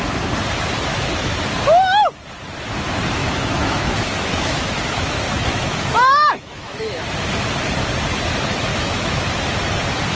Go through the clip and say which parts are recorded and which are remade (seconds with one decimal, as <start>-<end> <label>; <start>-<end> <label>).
0.0-0.9 recorded; 0.9-1.4 remade; 1.4-3.2 recorded; 3.2-7.0 remade; 7.0-8.7 recorded; 8.7-9.5 remade; 9.5-10.1 recorded

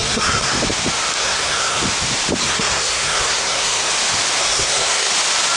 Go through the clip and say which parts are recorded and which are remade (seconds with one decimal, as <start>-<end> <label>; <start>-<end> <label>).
0.0-0.5 remade; 0.5-1.2 recorded; 1.2-1.8 remade; 1.8-2.4 recorded; 2.4-3.9 remade; 3.9-4.4 recorded; 4.4-5.1 remade; 5.1-5.6 recorded